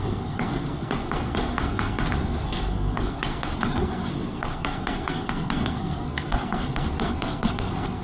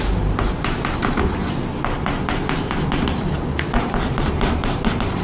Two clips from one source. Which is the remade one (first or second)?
first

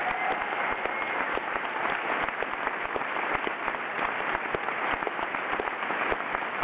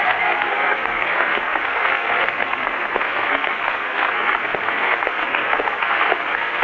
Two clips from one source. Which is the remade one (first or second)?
second